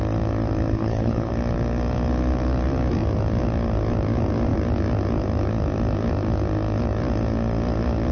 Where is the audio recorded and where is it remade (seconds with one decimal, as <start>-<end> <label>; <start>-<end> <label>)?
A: 0.0-0.7 recorded; 0.7-1.3 remade; 1.3-8.1 recorded